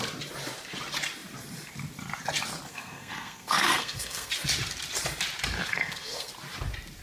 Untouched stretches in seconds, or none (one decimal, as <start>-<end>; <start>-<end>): 0.0-2.7; 4.3-5.7; 6.3-7.0